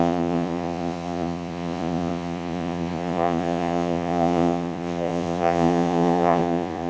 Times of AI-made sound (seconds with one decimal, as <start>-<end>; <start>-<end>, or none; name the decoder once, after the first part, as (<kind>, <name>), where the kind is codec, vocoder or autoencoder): 0.0-6.9 (vocoder, Vocos)

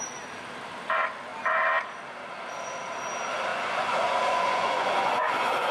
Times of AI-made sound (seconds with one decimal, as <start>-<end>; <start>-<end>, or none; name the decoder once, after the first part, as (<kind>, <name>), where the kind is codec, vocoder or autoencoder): 3.5-5.7 (vocoder, Vocos)

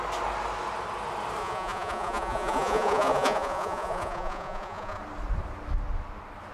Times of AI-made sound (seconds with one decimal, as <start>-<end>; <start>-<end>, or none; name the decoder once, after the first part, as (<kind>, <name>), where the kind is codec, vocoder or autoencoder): 1.4-5.0 (vocoder, Vocos)

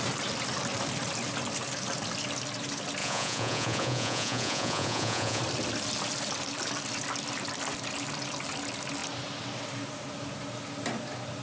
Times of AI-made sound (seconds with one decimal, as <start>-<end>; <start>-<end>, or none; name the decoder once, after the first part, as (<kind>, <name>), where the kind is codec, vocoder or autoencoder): 3.0-5.4 (vocoder, Vocos)

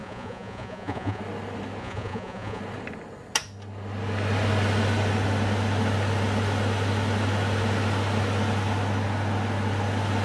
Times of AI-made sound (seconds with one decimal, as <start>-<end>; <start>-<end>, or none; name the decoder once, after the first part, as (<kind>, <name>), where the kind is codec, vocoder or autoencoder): 0.0-1.2 (vocoder, Vocos); 1.8-2.6